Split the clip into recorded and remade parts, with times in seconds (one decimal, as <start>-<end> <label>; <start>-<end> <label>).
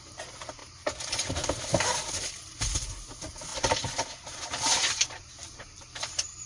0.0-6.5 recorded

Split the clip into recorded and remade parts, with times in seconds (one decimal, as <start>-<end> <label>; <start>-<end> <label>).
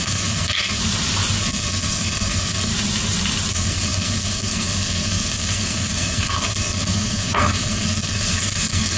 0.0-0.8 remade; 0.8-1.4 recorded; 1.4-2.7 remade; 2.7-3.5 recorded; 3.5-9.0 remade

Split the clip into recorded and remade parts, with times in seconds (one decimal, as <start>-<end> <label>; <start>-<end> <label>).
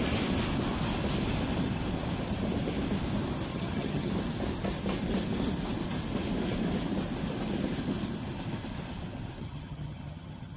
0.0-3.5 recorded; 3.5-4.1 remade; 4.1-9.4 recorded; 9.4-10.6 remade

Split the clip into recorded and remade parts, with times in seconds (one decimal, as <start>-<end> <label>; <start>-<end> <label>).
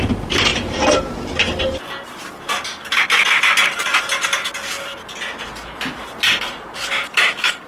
0.0-7.7 recorded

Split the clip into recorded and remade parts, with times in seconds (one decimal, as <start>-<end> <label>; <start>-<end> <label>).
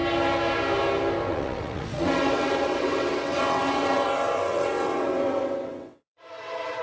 0.0-1.3 recorded; 1.3-6.8 remade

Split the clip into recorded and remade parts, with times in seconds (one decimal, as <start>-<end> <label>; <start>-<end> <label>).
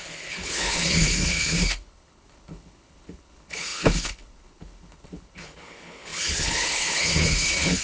0.0-7.8 remade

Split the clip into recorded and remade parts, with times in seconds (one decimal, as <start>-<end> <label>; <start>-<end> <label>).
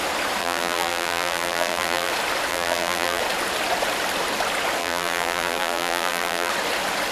0.0-0.4 recorded; 0.4-2.1 remade; 2.1-2.5 recorded; 2.5-3.2 remade; 3.2-4.8 recorded; 4.8-6.5 remade; 6.5-7.1 recorded